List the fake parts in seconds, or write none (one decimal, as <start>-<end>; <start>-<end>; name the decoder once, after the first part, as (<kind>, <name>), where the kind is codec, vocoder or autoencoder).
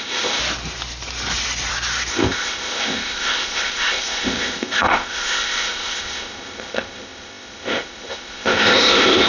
0.0-0.4 (codec, ZipCodec); 2.1-9.3